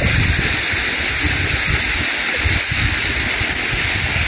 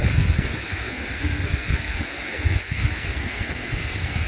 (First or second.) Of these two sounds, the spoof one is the second